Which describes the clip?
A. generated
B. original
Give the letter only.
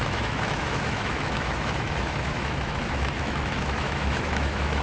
A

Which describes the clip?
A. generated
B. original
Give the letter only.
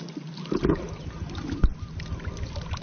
B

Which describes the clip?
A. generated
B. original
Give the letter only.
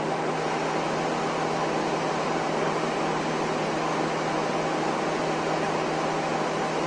B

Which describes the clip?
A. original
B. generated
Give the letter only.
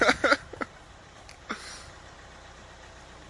A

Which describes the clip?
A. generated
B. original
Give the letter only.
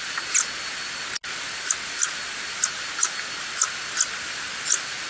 B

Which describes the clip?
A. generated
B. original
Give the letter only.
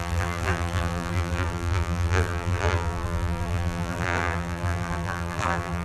A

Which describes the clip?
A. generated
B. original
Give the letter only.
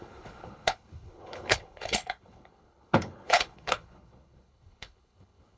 A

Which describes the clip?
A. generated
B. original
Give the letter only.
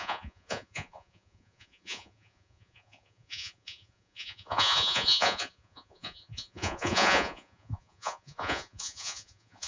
A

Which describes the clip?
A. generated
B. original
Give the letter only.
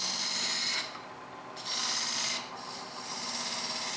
B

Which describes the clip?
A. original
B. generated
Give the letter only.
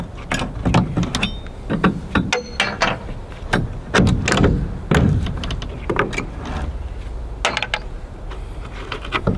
A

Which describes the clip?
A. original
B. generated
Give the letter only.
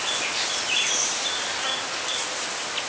A